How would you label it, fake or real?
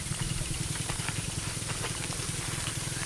fake